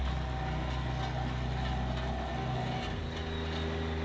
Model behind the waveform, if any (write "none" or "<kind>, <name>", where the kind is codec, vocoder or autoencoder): none